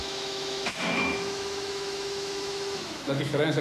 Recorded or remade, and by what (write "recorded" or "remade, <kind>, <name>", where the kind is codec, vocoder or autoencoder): remade, autoencoder, DAC-VAE